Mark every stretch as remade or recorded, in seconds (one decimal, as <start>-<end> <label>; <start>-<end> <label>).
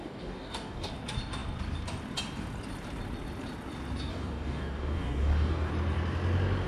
0.0-0.9 remade; 0.9-4.1 recorded; 4.1-5.7 remade; 5.7-6.7 recorded